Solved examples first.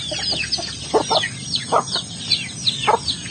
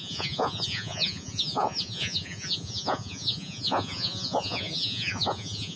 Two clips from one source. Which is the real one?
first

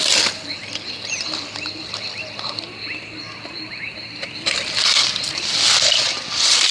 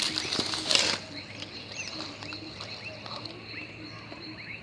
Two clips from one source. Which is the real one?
second